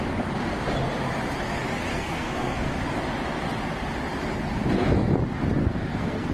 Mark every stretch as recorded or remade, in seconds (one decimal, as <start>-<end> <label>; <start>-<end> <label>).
0.0-1.9 recorded; 1.9-2.7 remade; 2.7-5.6 recorded; 5.6-6.3 remade